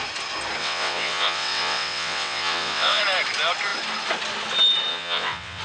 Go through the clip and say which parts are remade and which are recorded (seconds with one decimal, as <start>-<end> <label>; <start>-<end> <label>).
0.0-0.6 recorded; 0.6-3.0 remade; 3.0-4.9 recorded; 4.9-5.6 remade

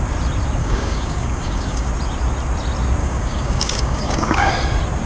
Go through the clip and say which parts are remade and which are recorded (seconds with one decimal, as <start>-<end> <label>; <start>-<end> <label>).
0.0-0.6 recorded; 0.6-1.9 remade; 1.9-3.0 recorded; 3.0-4.5 remade; 4.5-5.1 recorded

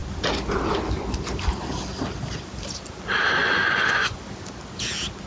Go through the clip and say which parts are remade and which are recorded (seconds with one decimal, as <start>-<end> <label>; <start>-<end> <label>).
0.0-3.4 recorded; 3.4-4.2 remade; 4.2-5.3 recorded

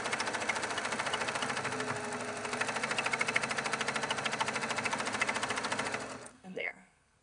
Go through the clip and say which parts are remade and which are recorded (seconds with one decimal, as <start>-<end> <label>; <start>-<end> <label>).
0.0-6.3 recorded; 6.3-7.2 remade

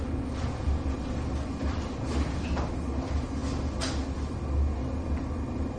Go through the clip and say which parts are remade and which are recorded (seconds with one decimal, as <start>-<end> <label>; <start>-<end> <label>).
0.0-5.8 recorded

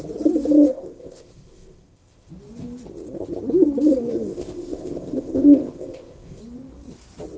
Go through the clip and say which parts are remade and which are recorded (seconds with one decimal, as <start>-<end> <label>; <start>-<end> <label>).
0.0-0.7 recorded; 0.7-2.3 remade; 2.3-4.1 recorded; 4.1-6.4 remade; 6.4-7.4 recorded

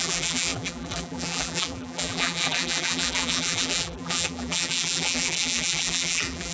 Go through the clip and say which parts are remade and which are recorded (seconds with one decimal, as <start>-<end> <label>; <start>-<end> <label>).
0.0-6.5 remade